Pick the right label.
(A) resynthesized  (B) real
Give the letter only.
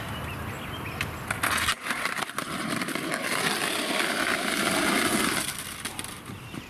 B